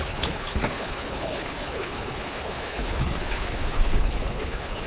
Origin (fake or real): fake